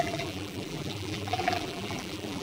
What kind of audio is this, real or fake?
fake